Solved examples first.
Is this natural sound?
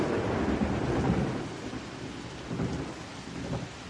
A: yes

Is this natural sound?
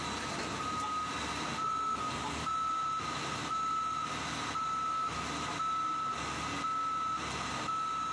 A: yes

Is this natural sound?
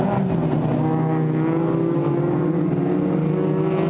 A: yes